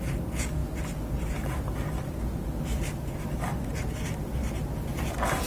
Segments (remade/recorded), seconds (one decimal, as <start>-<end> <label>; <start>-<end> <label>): 0.0-5.5 recorded